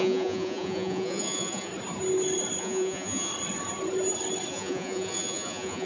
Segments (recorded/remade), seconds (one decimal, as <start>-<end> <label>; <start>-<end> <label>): 0.0-1.7 remade; 1.7-2.6 recorded; 2.6-3.3 remade; 3.3-4.5 recorded; 4.5-5.8 remade